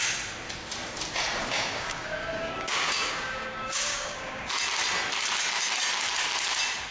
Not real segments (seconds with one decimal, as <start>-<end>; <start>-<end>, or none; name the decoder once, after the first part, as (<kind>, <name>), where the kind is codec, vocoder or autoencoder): 1.4-4.5 (codec, DAC)